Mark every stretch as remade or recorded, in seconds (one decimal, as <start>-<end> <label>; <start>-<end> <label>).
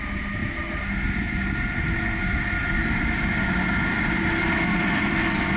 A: 0.0-5.6 recorded